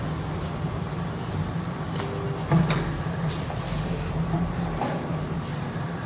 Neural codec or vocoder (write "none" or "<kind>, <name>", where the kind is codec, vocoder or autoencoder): none